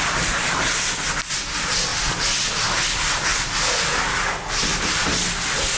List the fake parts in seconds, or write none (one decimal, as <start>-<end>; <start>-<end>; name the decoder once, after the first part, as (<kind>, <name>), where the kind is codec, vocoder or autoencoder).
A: none